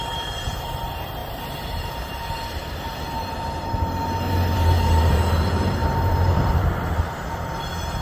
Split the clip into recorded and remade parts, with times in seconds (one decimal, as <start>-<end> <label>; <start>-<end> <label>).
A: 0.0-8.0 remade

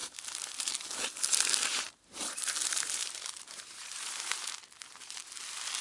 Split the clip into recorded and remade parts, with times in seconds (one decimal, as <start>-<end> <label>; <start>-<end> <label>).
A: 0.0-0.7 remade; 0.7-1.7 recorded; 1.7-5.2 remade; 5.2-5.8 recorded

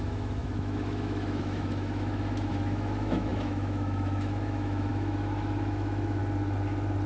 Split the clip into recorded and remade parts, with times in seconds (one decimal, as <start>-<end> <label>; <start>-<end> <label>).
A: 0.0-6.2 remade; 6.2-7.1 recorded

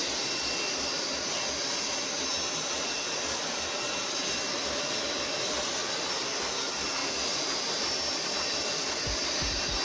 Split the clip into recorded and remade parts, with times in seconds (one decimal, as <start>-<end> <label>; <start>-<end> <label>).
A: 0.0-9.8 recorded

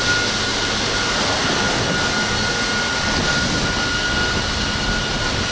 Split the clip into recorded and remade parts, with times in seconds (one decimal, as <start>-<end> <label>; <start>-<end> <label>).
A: 0.0-5.5 recorded